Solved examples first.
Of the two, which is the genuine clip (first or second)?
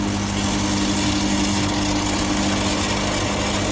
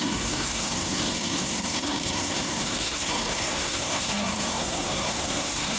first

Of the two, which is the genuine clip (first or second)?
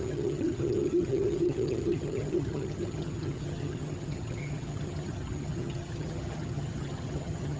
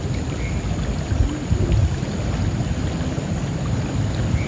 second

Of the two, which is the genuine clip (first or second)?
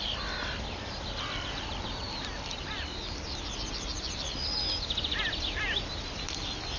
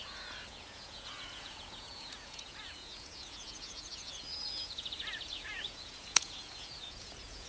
first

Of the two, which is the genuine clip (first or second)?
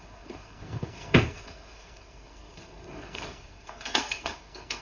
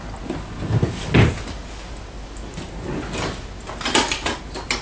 second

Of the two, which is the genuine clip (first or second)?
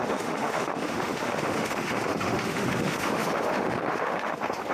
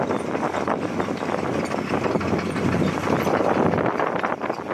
second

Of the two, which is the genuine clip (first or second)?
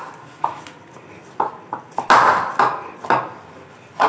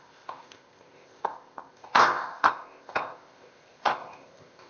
first